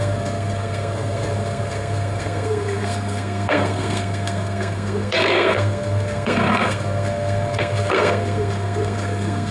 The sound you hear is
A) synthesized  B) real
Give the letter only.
A